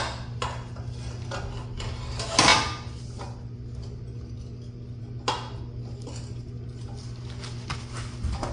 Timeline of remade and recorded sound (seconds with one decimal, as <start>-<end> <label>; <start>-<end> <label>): 0.0-8.5 recorded